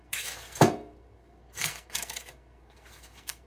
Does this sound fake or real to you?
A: fake